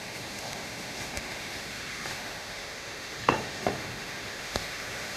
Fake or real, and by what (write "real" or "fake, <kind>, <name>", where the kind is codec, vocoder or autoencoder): fake, autoencoder, DAC-VAE